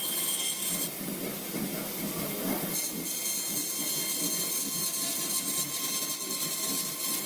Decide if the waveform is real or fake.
real